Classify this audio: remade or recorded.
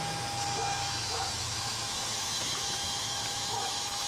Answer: remade